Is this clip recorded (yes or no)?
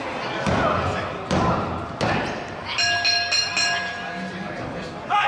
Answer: yes